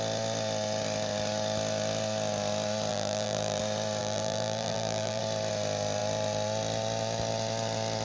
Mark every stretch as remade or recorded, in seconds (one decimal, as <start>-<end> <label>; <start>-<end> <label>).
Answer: 0.0-2.9 recorded; 2.9-3.6 remade; 3.6-4.0 recorded; 4.0-5.2 remade; 5.2-8.0 recorded